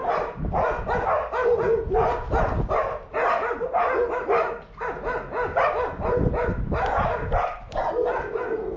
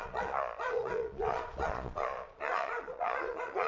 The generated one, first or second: second